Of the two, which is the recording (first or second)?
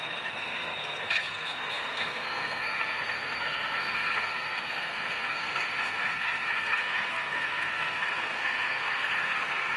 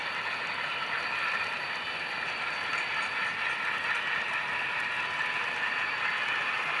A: second